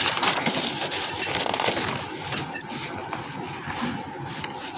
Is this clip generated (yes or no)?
no